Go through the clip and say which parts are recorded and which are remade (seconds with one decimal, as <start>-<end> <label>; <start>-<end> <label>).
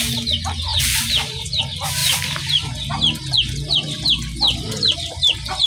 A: 0.0-0.7 recorded; 0.7-1.6 remade; 1.6-5.7 recorded